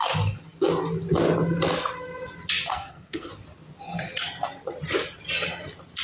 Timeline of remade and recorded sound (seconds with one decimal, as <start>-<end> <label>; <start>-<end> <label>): 0.0-2.7 recorded; 2.7-3.3 remade; 3.3-6.0 recorded